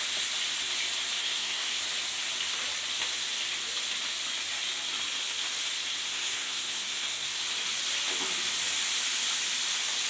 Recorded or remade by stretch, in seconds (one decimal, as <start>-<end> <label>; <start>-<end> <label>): 0.0-1.2 recorded; 1.2-1.8 remade; 1.8-6.1 recorded; 6.1-7.4 remade; 7.4-10.1 recorded